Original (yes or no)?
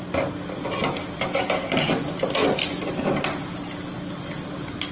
yes